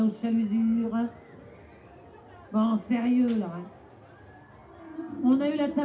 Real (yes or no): yes